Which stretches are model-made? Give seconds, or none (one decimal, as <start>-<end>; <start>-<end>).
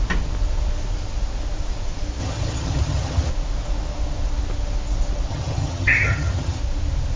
2.2-3.3; 5.3-6.6